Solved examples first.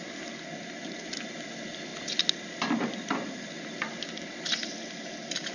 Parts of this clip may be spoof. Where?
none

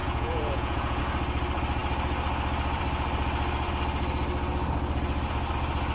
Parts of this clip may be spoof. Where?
0.0-1.0 (vocoder, Vocos)

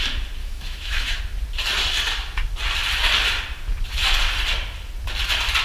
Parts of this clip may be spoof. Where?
0.4-1.2 (autoencoder, DAC-VAE)

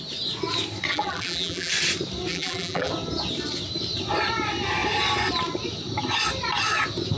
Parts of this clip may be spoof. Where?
0.9-1.7 (vocoder, BigVGAN v2); 2.3-2.9

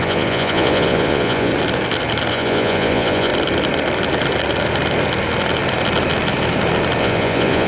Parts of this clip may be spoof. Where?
0.0-1.5 (vocoder, Vocos); 2.3-3.3; 7.0-7.7